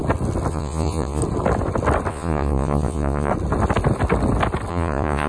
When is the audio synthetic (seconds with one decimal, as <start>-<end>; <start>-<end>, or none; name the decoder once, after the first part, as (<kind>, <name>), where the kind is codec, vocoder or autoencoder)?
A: 0.5-1.2 (vocoder, Vocos); 2.1-3.3; 4.7-5.3